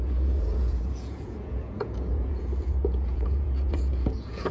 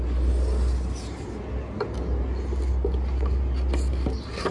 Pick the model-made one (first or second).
first